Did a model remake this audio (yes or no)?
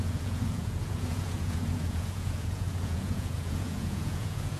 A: yes